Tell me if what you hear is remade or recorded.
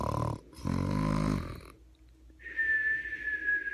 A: recorded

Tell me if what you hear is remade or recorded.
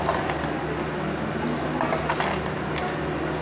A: recorded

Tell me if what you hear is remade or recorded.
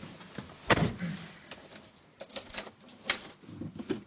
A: recorded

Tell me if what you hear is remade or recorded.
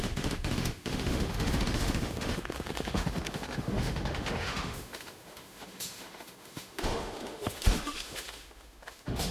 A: remade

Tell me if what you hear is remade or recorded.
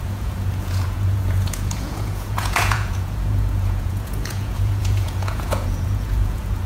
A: remade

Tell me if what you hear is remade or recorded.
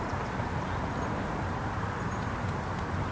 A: recorded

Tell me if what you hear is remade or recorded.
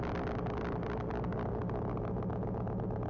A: recorded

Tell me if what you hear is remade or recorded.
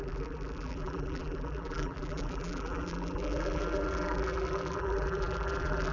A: remade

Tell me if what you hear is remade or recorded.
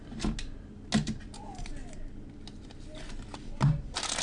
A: recorded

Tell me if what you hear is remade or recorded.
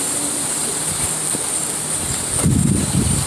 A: recorded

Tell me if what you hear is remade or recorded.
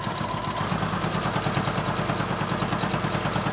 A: recorded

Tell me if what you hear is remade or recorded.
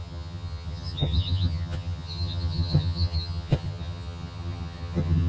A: remade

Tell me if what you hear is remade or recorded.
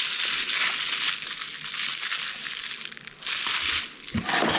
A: recorded